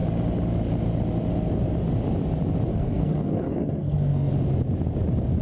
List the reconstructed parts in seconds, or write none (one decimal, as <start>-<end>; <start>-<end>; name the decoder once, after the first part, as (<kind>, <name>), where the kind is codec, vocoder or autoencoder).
2.7-4.3 (codec, SNAC)